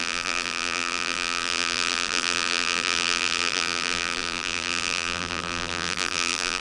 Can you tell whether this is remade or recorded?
remade